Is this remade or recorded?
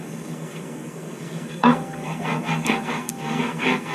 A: remade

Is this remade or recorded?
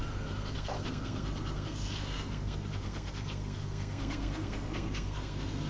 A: remade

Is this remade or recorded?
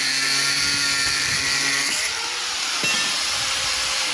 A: recorded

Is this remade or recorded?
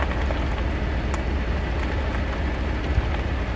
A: recorded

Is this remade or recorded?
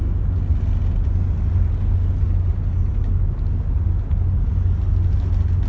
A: recorded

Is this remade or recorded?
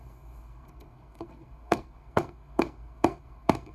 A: remade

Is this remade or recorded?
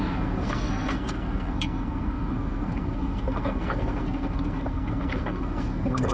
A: remade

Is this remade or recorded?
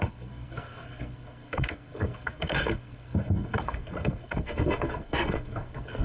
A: remade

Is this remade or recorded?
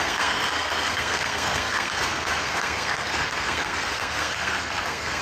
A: remade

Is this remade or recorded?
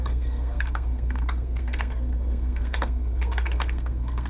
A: remade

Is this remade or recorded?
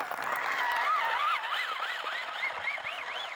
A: recorded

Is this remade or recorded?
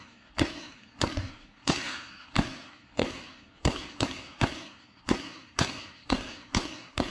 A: remade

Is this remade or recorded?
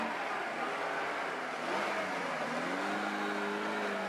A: recorded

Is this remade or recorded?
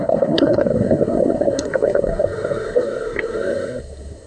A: remade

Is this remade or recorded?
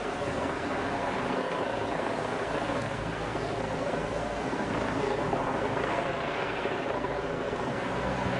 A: remade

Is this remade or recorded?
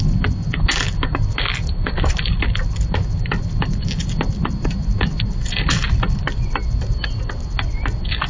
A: recorded